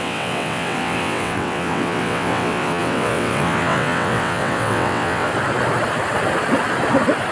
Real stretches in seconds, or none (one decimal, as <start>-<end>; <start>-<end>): 5.3-7.3